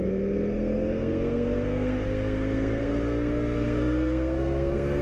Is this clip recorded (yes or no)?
no